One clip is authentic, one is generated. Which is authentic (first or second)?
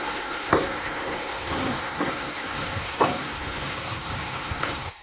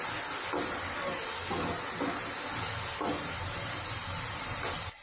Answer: second